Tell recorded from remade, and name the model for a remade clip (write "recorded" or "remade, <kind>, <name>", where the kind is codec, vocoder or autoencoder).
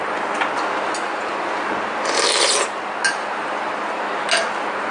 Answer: recorded